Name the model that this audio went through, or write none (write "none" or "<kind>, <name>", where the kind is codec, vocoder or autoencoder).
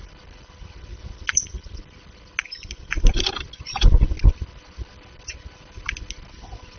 none